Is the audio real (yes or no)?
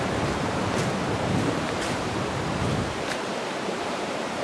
no